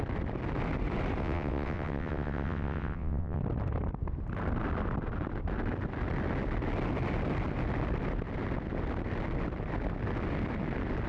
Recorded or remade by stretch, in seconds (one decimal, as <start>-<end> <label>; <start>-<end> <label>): 0.0-1.2 recorded; 1.2-3.4 remade; 3.4-11.1 recorded